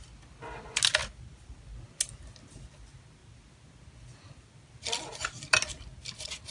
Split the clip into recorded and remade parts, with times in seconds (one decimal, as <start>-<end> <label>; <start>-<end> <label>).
0.0-6.5 recorded